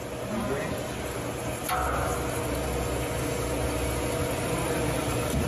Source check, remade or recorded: recorded